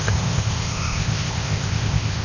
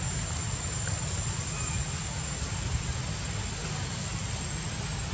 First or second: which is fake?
first